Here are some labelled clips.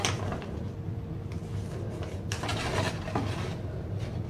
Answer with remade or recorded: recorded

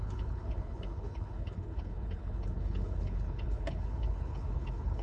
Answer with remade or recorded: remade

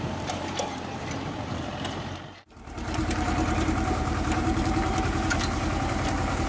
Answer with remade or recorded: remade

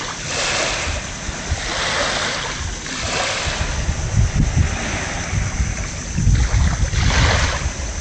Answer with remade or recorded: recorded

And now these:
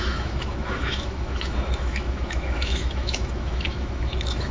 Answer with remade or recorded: remade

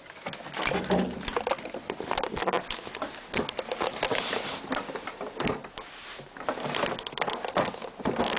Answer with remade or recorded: recorded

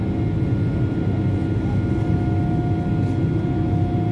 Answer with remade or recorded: recorded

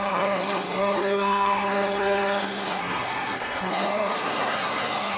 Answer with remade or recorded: remade